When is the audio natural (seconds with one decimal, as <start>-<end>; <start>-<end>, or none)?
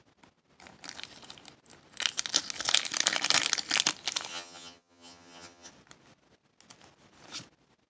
0.0-4.3; 5.7-7.9